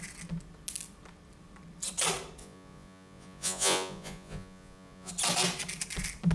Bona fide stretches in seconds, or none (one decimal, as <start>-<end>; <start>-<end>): 0.0-2.4; 5.1-6.3

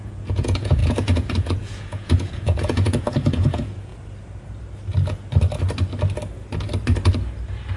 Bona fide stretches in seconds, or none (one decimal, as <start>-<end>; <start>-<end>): 3.9-7.8